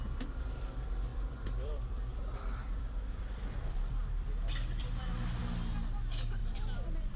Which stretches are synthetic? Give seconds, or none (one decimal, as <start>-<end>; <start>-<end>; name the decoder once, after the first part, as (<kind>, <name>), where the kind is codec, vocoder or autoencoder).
1.1-5.4 (vocoder, BigVGAN v2); 6.4-7.2

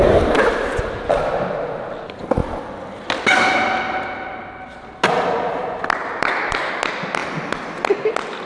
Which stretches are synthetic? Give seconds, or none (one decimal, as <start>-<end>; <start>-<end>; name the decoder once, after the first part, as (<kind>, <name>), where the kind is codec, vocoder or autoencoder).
6.0-6.7 (vocoder, BigVGAN v2)

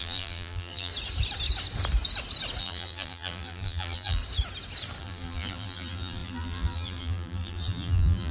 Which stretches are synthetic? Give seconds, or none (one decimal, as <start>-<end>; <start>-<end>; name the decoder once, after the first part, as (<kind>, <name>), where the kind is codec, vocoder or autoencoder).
0.0-0.9 (vocoder, BigVGAN v2); 2.6-4.2; 5.0-8.3

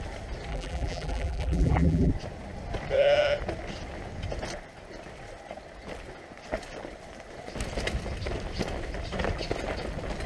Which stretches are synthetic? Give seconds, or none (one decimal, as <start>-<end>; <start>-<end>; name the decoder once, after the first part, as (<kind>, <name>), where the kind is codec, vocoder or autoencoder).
0.5-2.1 (vocoder, BigVGAN v2)

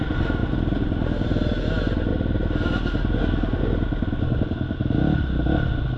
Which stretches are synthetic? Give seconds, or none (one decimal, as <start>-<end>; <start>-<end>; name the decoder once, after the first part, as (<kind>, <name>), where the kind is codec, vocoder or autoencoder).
0.4-1.6 (vocoder, BigVGAN v2)

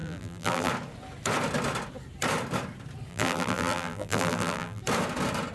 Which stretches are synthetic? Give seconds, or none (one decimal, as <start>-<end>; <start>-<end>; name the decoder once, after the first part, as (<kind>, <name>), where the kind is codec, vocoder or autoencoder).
0.0-0.7 (vocoder, BigVGAN v2); 3.1-4.8

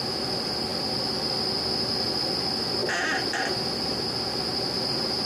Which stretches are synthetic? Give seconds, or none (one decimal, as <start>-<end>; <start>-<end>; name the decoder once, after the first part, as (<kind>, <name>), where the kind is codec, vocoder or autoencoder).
none

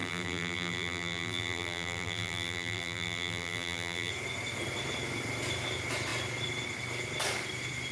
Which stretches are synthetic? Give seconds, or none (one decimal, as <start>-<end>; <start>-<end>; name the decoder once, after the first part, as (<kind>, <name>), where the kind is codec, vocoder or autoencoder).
0.0-4.1 (vocoder, BigVGAN v2)